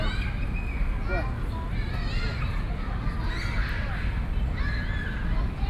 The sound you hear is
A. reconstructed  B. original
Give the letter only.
B